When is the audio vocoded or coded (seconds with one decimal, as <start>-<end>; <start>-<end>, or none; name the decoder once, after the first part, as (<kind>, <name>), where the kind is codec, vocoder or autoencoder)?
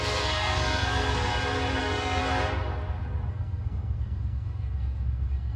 0.0-1.3 (codec, SNAC); 1.8-2.2; 3.3-5.6